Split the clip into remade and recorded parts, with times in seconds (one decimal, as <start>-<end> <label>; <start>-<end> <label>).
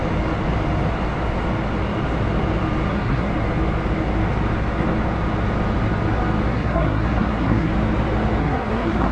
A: 0.0-2.9 recorded; 2.9-3.3 remade; 3.3-6.5 recorded; 6.5-7.7 remade; 7.7-8.4 recorded; 8.4-9.1 remade